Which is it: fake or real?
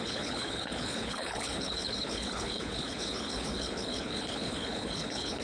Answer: fake